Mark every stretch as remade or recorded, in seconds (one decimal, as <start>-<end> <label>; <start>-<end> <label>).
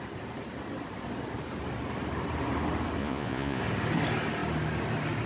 0.0-3.0 recorded; 3.0-3.6 remade; 3.6-5.3 recorded